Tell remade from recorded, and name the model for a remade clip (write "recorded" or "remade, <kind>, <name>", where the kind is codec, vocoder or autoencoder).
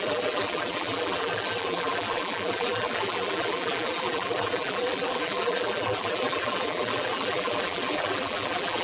remade, vocoder, BigVGAN v2